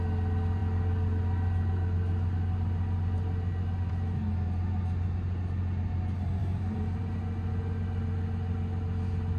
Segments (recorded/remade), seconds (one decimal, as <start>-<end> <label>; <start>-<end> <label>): 0.0-6.4 recorded; 6.4-7.0 remade; 7.0-9.4 recorded

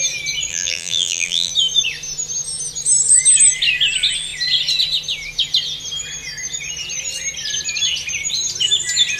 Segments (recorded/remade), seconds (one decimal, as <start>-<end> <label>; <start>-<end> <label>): 0.0-0.5 recorded; 0.5-1.5 remade; 1.5-9.2 recorded